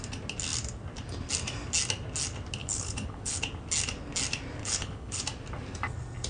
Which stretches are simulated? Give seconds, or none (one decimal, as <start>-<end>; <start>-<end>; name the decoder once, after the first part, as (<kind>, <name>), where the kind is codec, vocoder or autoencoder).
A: 2.6-3.4 (codec, HILCodec); 4.6-5.2